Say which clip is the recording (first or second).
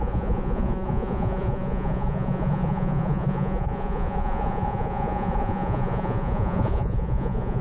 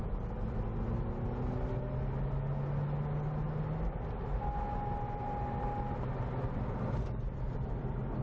second